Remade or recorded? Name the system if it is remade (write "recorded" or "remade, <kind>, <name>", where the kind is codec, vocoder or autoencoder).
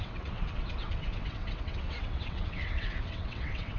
remade, vocoder, WaveNeXt